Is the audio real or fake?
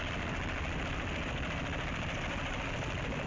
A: real